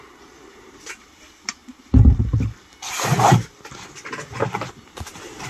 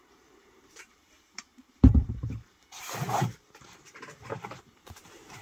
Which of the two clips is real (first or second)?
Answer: first